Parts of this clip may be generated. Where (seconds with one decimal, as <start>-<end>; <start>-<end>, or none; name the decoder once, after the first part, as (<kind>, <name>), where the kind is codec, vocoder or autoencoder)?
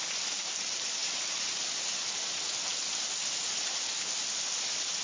none